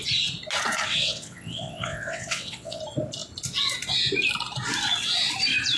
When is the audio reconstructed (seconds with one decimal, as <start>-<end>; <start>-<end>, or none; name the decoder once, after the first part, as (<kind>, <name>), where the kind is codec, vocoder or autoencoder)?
0.9-2.8 (vocoder, WaveNeXt)